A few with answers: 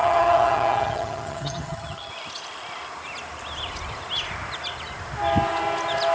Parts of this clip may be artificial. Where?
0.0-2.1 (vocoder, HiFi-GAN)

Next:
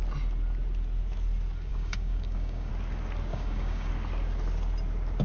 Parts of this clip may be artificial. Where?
1.7-2.7 (codec, DAC); 3.3-3.9

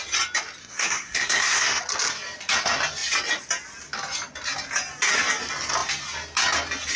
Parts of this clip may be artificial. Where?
0.6-1.8 (codec, SNAC)

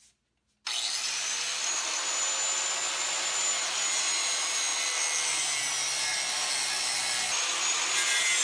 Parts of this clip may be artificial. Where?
none

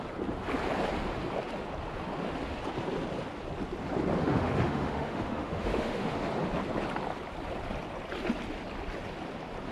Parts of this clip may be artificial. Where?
4.2-6.3 (autoencoder, DAC-VAE)

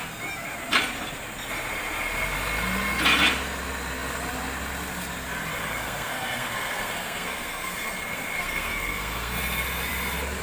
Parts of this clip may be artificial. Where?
5.6-9.4 (codec, SNAC)